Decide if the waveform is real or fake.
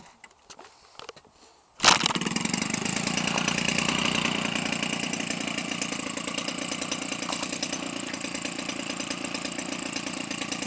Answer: real